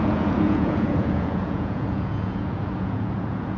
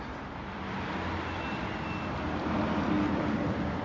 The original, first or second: second